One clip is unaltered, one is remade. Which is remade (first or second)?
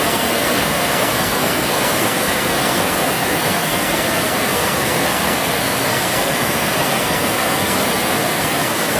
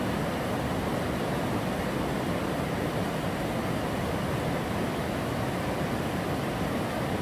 first